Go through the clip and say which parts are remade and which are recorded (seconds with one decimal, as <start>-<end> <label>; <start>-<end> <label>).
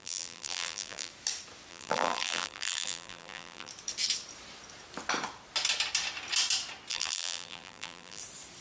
0.0-1.1 remade; 1.1-1.7 recorded; 1.7-3.7 remade; 3.7-6.9 recorded; 6.9-8.2 remade; 8.2-8.6 recorded